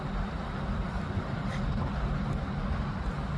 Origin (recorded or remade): recorded